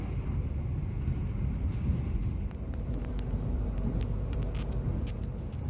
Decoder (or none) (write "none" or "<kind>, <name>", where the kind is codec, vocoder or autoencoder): none